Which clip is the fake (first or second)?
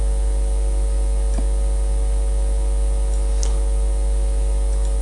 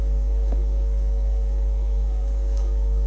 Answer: second